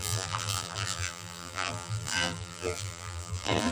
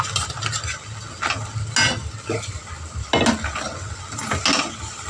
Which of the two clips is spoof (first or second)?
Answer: first